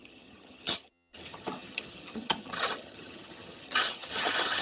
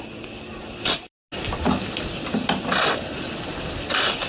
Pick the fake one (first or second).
first